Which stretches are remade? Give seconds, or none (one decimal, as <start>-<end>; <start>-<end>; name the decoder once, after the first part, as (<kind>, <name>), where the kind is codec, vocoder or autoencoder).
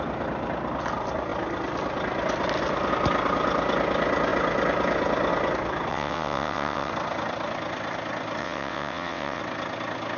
5.9-6.9 (vocoder, WaveNeXt); 8.4-9.4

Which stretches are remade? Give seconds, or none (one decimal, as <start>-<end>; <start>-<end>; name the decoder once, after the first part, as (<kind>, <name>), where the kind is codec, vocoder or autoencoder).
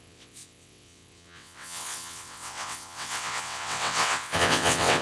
0.0-5.0 (vocoder, WaveNeXt)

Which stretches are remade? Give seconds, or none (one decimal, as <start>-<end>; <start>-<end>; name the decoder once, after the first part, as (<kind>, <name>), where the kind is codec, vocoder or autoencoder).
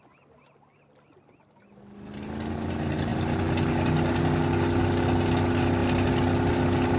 none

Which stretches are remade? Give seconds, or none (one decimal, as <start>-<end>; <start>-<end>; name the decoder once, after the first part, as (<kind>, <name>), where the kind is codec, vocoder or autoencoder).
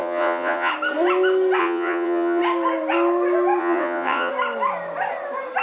0.0-0.7 (vocoder, WaveNeXt); 1.6-2.4; 3.6-4.3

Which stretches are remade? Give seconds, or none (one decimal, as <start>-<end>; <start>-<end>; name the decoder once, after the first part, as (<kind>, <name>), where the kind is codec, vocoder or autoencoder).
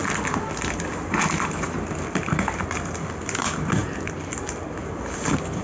none